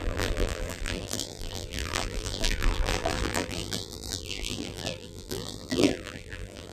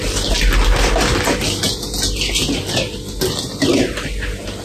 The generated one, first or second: first